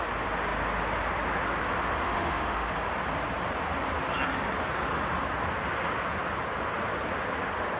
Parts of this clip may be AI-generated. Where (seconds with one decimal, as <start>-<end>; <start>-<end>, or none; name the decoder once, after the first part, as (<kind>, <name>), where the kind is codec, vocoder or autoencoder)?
2.0-2.7 (autoencoder, DAC-VAE)